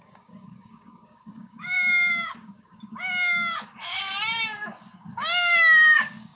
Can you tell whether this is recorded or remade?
remade